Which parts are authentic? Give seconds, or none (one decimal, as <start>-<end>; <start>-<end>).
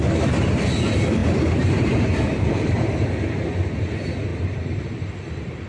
0.0-1.2; 3.1-4.3; 4.8-5.7